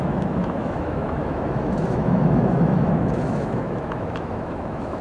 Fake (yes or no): yes